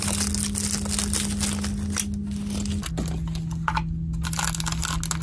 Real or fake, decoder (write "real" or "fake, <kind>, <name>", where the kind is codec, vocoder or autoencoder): real